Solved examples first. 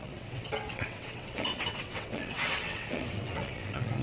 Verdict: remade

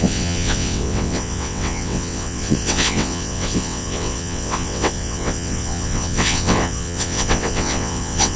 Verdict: remade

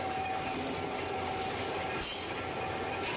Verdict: recorded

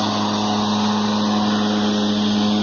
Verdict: recorded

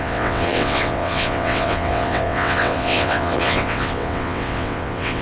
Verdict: remade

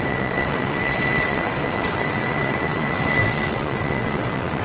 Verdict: remade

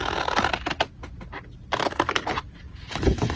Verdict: recorded